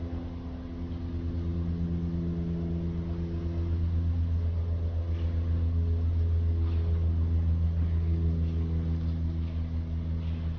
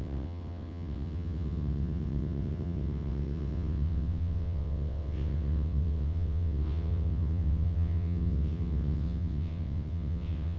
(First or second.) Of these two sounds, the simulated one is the second